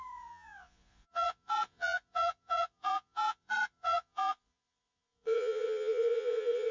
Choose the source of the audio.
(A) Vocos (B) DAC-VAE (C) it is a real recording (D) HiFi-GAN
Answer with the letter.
A